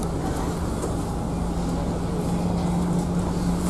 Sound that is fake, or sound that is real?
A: real